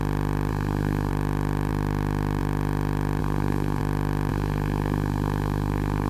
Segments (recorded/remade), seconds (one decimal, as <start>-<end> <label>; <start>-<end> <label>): 0.0-0.5 recorded; 0.5-1.1 remade; 1.1-3.2 recorded; 3.2-3.8 remade; 3.8-4.3 recorded; 4.3-6.1 remade